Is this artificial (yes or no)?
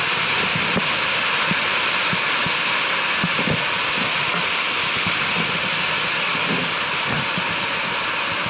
no